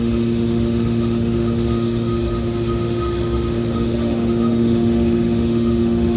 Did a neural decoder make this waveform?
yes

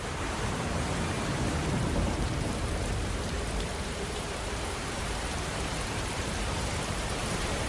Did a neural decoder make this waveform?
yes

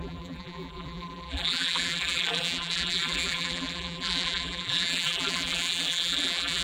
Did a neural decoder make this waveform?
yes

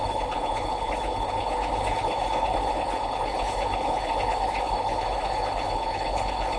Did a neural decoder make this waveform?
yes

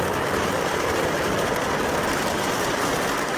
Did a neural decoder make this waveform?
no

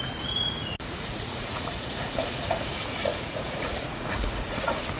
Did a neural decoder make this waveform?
yes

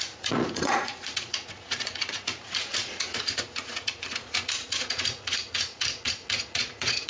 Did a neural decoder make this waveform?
yes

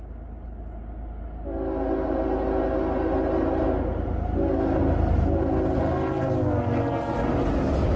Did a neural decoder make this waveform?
no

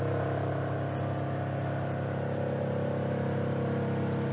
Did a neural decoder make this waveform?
no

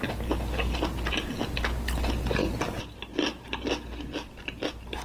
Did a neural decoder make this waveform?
no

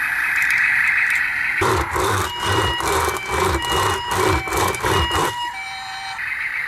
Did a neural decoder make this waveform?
yes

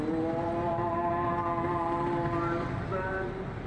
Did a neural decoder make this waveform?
no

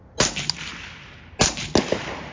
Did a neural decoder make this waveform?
no